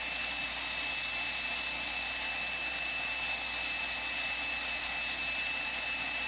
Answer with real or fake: real